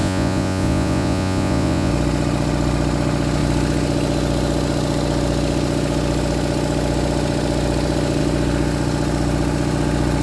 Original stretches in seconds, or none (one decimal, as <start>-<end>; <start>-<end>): 1.9-10.2